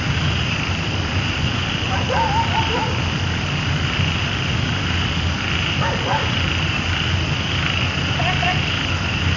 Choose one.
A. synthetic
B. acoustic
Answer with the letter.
B